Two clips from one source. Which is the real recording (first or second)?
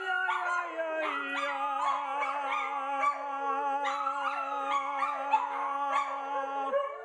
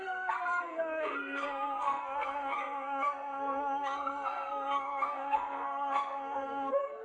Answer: first